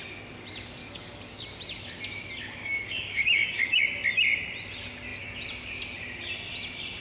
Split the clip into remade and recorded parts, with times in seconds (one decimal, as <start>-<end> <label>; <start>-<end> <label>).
0.0-0.8 recorded; 0.8-1.4 remade; 1.4-2.6 recorded; 2.6-3.8 remade; 3.8-7.0 recorded